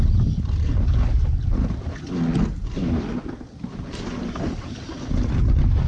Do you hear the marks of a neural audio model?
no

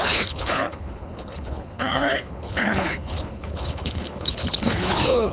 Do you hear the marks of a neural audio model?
yes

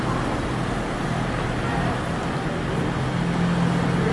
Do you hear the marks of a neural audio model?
no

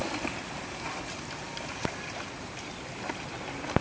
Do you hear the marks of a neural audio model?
no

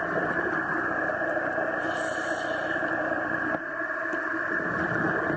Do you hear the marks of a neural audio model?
yes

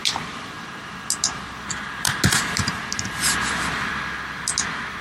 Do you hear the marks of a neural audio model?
no